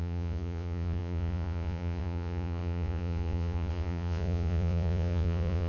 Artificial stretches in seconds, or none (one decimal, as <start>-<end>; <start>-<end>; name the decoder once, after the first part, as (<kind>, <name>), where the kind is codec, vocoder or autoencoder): 0.0-5.7 (vocoder, Vocos)